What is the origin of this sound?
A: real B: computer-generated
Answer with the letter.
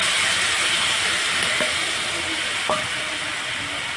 A